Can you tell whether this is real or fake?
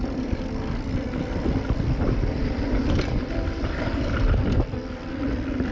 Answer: fake